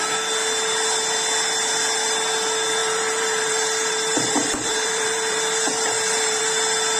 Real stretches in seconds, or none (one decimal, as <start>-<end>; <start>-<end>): 0.0-2.8; 6.4-7.0